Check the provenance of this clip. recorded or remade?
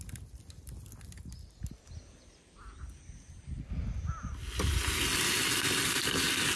recorded